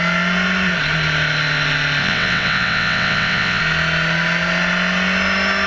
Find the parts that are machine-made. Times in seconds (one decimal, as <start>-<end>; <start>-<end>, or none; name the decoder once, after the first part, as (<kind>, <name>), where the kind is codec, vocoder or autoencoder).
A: 2.0-3.6 (vocoder, WaveNeXt)